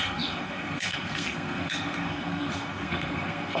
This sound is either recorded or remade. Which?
remade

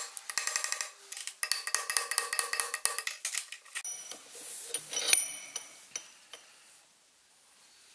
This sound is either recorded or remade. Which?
recorded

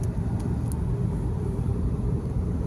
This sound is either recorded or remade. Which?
recorded